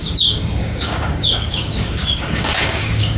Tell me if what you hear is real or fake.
fake